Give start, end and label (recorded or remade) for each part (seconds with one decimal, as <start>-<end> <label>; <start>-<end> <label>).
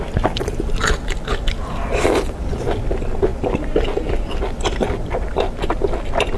0.0-6.4 recorded